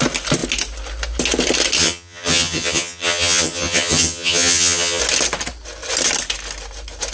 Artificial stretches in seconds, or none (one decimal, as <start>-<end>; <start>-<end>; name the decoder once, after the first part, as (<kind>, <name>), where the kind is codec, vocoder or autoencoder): 1.8-5.0 (vocoder, HiFi-GAN)